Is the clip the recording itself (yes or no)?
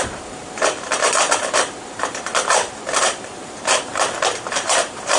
no